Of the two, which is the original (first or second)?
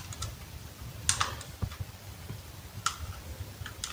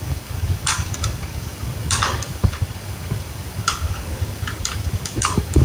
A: first